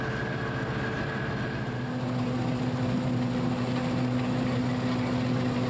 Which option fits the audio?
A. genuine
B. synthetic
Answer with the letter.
A